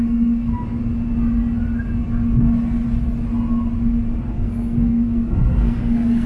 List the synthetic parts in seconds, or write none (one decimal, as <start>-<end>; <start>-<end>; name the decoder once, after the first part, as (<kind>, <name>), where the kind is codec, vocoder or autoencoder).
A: 0.0-0.5 (codec, SNAC); 4.3-6.3